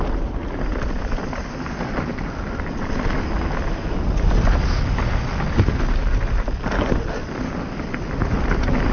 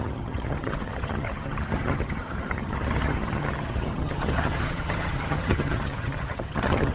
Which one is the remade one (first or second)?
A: second